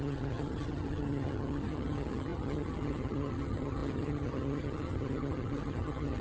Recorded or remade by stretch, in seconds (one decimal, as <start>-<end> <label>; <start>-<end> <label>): 0.0-6.2 remade